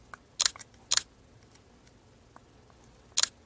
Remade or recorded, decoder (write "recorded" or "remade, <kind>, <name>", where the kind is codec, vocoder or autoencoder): recorded